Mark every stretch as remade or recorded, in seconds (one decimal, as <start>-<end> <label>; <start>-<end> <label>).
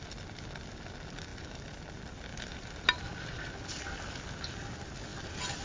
0.0-5.6 recorded